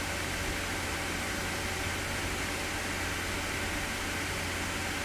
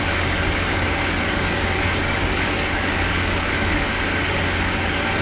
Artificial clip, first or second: second